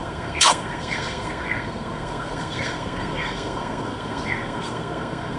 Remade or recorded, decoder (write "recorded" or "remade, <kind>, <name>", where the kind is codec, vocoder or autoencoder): remade, codec, SNAC